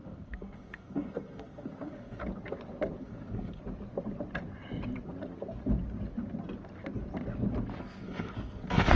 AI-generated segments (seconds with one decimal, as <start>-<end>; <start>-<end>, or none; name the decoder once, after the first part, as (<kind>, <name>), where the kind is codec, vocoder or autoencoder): 0.0-2.2 (codec, SNAC); 3.0-3.6; 7.8-9.0